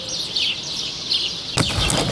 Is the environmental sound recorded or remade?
recorded